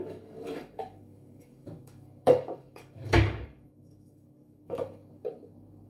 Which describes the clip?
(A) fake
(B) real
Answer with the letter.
A